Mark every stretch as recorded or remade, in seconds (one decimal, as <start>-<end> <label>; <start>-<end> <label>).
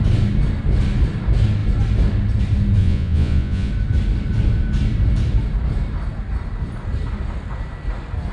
0.0-2.8 recorded; 2.8-3.7 remade; 3.7-8.3 recorded